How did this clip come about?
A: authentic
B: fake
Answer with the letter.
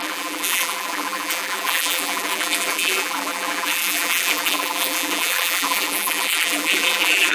B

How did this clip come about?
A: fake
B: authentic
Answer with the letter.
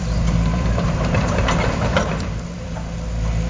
A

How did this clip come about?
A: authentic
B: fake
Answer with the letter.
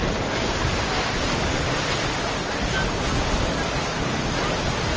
A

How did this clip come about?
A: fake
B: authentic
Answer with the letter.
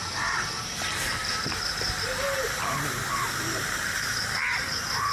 A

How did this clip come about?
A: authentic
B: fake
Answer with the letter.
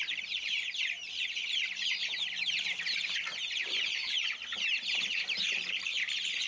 B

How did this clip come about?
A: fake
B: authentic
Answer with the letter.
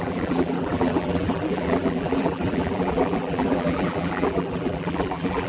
A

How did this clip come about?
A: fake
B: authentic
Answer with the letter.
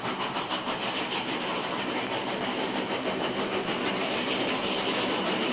A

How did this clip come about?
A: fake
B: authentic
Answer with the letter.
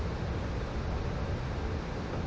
B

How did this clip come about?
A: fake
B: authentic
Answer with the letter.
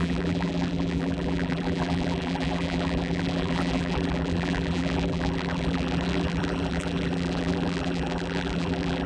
A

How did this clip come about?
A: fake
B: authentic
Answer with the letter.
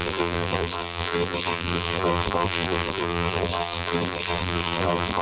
A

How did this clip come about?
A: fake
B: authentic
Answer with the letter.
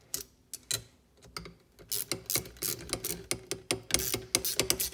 B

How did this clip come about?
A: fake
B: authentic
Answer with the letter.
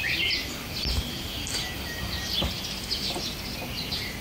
B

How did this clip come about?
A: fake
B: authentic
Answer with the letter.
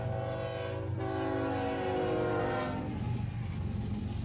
B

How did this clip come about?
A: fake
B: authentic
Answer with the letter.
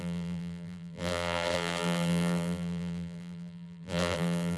A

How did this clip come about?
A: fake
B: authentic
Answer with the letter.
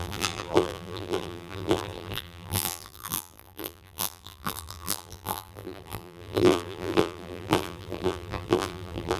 A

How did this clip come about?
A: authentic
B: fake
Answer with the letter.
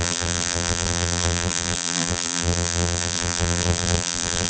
B